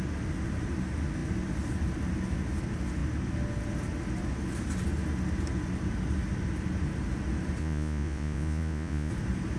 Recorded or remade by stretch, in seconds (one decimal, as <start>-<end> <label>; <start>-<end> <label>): 0.0-7.6 recorded; 7.6-9.1 remade; 9.1-9.6 recorded